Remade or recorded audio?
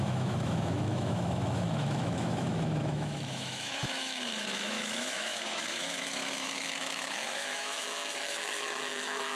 remade